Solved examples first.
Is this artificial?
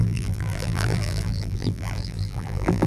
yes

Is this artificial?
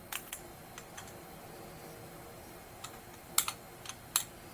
no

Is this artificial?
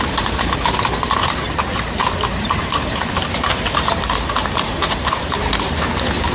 yes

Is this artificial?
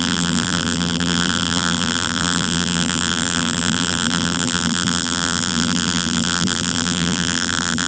yes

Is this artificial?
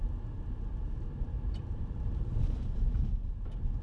yes